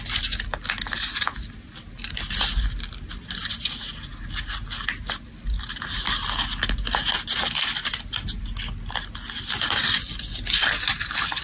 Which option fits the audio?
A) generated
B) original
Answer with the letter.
B